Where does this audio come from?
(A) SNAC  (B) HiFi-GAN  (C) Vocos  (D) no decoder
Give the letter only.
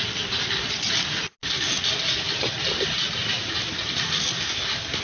D